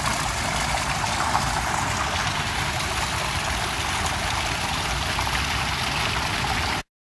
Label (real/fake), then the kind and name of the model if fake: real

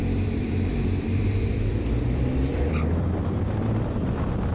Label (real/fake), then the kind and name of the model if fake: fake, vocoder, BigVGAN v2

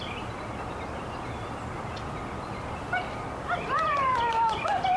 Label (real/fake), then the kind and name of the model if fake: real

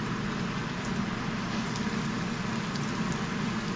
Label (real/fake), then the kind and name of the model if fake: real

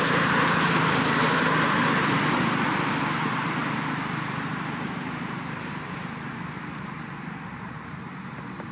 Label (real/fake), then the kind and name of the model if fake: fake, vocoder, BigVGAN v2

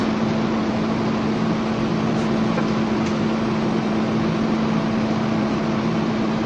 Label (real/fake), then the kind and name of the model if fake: real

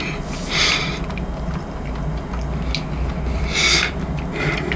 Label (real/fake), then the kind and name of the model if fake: real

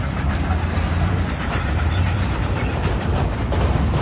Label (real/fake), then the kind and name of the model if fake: fake, vocoder, BigVGAN v2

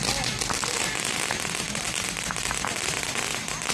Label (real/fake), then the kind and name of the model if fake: fake, vocoder, BigVGAN v2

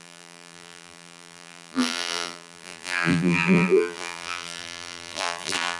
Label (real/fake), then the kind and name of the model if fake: fake, vocoder, BigVGAN v2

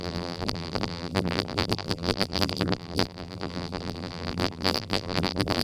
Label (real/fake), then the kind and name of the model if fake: fake, vocoder, BigVGAN v2